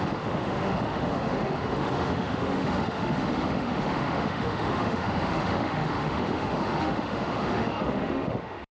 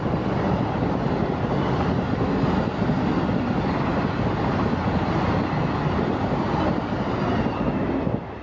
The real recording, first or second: second